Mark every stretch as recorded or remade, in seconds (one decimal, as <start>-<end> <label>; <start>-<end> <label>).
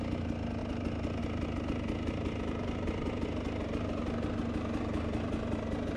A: 0.0-6.0 recorded